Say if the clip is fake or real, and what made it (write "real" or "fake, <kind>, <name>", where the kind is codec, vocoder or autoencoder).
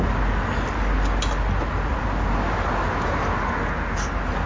real